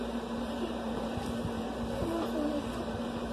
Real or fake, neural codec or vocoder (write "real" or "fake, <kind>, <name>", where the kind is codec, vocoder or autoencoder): fake, vocoder, BigVGAN v2